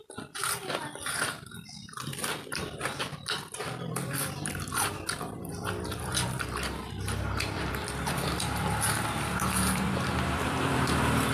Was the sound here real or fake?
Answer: fake